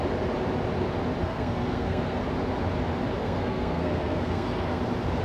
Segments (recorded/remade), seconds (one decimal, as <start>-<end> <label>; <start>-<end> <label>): 0.0-1.2 recorded; 1.2-2.2 remade; 2.2-3.2 recorded; 3.2-4.8 remade; 4.8-5.2 recorded